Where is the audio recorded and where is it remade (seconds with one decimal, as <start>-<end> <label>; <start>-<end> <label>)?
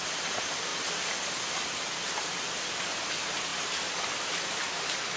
0.0-5.2 recorded